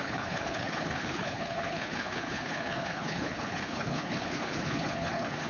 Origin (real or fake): fake